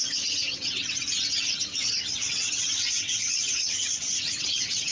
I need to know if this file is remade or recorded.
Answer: remade